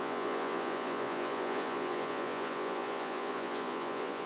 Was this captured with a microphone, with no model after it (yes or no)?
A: no